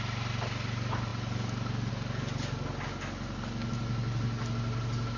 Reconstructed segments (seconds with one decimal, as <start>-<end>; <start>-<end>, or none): none